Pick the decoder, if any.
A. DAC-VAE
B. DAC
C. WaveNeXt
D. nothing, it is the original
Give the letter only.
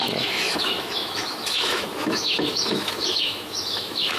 A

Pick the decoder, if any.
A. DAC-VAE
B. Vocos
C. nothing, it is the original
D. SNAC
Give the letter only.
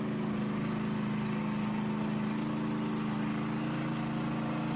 C